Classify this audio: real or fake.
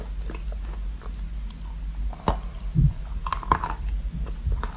real